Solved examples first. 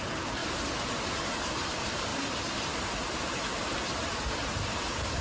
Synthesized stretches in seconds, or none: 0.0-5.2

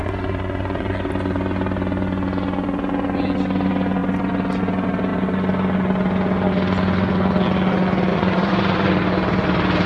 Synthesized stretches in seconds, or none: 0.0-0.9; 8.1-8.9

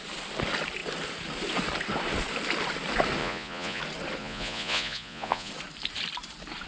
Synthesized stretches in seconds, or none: 3.2-3.8; 4.2-5.5